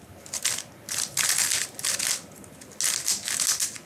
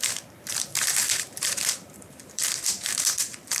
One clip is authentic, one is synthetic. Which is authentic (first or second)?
first